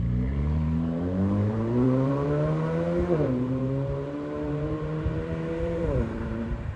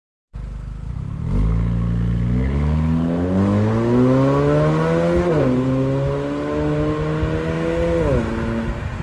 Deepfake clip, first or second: first